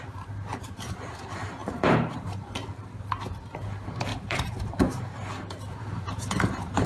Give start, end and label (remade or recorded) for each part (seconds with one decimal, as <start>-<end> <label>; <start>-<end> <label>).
0.0-1.6 recorded; 1.6-3.1 remade; 3.1-4.1 recorded; 4.1-4.6 remade; 4.6-5.8 recorded; 5.8-6.9 remade